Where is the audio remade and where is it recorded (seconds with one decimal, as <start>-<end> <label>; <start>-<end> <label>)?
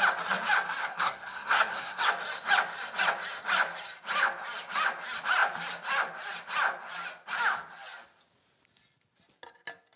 0.0-0.8 recorded; 0.8-2.0 remade; 2.0-10.0 recorded